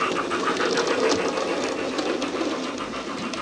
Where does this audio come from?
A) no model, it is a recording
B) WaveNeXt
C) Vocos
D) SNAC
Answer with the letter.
A